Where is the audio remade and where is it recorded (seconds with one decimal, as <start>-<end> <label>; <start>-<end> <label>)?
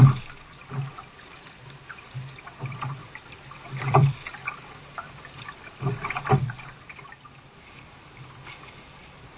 0.0-3.0 recorded; 3.0-6.3 remade; 6.3-9.4 recorded